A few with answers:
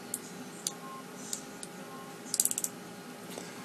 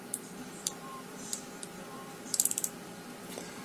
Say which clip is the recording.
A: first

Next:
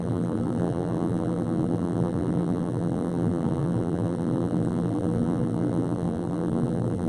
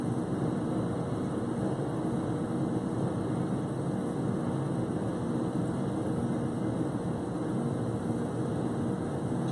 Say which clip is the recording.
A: second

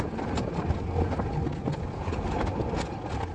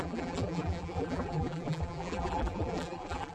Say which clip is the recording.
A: first